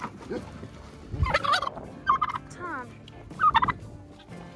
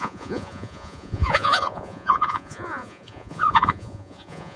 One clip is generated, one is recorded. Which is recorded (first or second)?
first